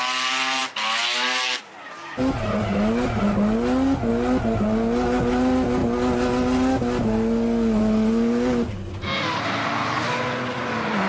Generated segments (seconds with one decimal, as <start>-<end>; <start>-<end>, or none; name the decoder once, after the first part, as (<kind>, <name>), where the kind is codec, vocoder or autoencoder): none